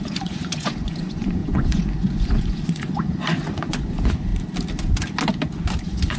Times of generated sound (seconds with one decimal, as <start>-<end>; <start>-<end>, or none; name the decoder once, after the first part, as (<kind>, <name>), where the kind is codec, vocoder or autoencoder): 0.0-4.3 (vocoder, Vocos); 5.8-6.2